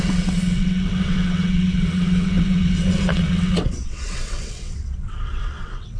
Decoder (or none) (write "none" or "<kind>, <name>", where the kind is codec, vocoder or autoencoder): vocoder, WaveNeXt